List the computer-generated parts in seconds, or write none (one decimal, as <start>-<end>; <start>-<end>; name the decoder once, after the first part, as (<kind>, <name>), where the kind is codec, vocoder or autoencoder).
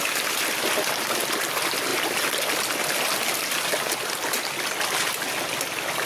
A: none